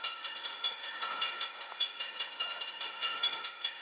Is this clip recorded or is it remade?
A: remade